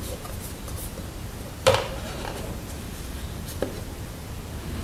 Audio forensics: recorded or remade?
remade